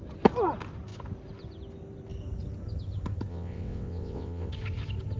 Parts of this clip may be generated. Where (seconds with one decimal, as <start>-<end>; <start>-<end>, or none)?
3.3-4.5